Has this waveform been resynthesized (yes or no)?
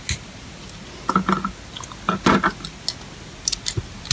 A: no